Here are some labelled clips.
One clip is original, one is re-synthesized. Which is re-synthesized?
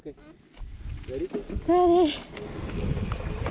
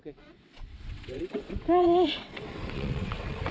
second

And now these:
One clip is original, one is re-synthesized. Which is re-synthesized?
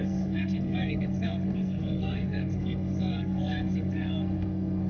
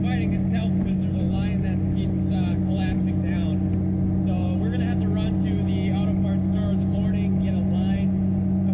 first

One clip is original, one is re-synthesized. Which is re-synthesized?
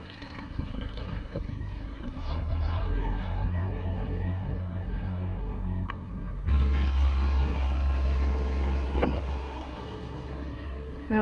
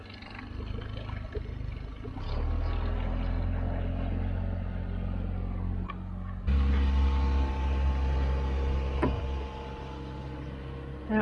first